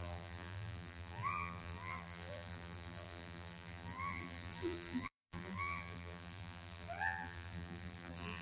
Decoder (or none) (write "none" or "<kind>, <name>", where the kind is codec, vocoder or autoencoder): vocoder, BigVGAN v2